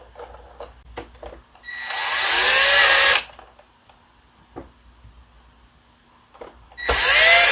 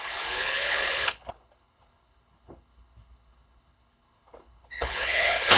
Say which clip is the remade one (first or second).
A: second